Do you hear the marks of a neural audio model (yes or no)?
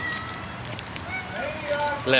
yes